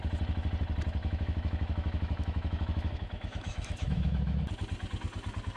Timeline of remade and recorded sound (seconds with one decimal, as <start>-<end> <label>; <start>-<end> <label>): 0.0-1.0 recorded; 1.0-4.4 remade; 4.4-5.6 recorded